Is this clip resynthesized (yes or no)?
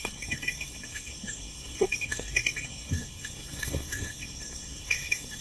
yes